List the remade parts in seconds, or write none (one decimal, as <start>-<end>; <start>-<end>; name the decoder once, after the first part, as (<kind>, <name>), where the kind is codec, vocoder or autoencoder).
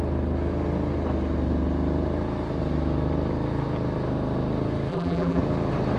4.9-5.4 (vocoder, BigVGAN v2)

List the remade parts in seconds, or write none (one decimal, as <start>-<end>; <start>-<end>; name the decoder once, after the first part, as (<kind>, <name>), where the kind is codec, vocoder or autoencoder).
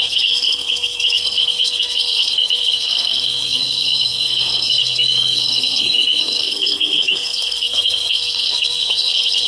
0.0-9.5 (codec, SNAC)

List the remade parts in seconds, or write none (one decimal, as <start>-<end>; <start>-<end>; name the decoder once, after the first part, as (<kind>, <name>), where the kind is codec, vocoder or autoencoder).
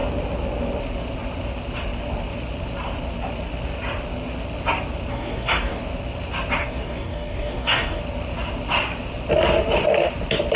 5.1-5.8 (codec, DAC); 6.6-8.0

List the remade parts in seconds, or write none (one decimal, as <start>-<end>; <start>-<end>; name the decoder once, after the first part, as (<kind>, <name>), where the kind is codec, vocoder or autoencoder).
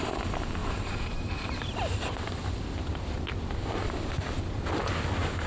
none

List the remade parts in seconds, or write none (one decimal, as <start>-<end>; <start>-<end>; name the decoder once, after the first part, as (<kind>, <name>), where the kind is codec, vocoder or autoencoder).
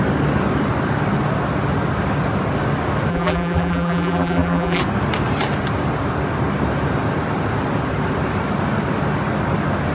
3.1-4.8 (vocoder, BigVGAN v2)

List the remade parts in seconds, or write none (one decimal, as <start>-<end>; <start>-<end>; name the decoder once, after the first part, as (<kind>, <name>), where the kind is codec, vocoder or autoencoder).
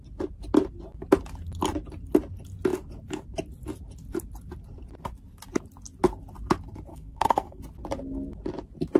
6.9-7.6 (codec, SNAC)